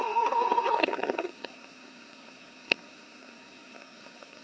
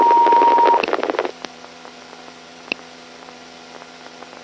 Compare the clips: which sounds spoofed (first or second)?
first